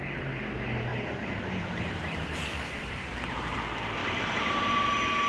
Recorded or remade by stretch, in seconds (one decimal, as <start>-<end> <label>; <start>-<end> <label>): 0.0-0.9 recorded; 0.9-2.0 remade; 2.0-4.0 recorded; 4.0-4.6 remade; 4.6-5.3 recorded